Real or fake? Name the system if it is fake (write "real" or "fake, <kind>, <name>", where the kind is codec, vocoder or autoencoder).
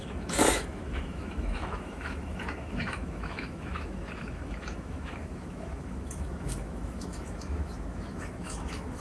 fake, autoencoder, DAC-VAE